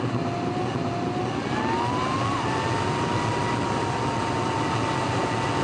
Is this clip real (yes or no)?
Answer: yes